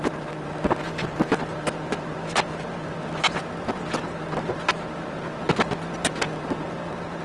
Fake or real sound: real